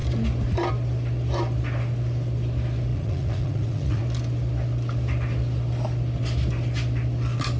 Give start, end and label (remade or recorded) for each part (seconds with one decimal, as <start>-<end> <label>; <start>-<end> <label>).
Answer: 0.0-2.9 recorded; 2.9-4.0 remade; 4.0-7.6 recorded